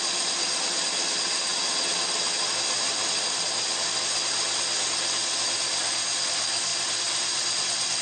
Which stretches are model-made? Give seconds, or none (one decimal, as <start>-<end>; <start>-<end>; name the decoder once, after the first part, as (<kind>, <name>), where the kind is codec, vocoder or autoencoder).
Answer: none